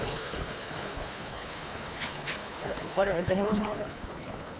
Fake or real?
fake